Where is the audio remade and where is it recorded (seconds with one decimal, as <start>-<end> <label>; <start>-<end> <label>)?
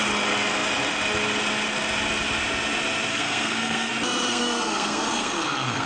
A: 0.0-3.1 recorded; 3.1-3.9 remade; 3.9-4.3 recorded; 4.3-5.9 remade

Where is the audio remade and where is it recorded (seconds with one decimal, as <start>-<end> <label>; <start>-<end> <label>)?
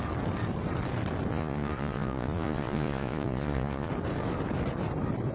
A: 0.0-1.3 recorded; 1.3-3.9 remade; 3.9-5.3 recorded